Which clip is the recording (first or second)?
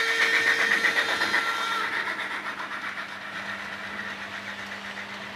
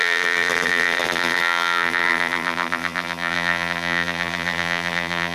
first